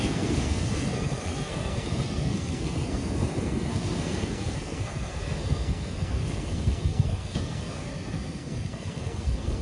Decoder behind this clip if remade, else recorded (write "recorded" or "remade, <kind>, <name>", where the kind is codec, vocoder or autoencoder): remade, codec, SNAC